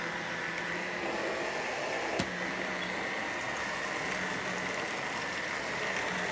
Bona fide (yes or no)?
yes